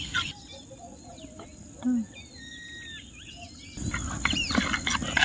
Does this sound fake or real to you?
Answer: real